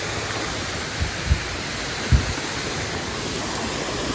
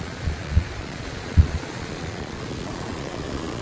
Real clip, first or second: first